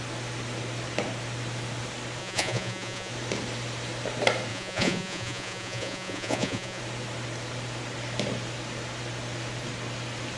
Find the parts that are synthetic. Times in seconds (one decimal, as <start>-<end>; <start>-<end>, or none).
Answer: 2.2-3.1; 4.5-6.8